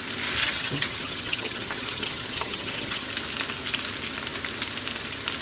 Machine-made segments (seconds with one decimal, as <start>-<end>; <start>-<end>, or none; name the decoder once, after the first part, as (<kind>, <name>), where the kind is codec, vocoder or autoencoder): 0.4-3.1 (vocoder, HiFi-GAN)